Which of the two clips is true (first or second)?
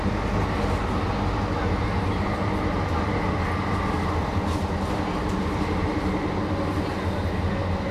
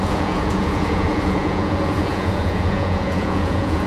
first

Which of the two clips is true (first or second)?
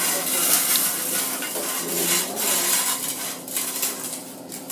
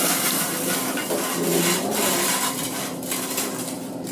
first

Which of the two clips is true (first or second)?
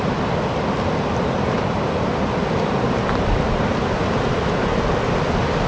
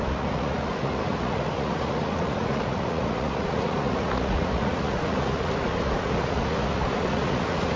first